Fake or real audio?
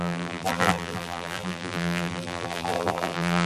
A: fake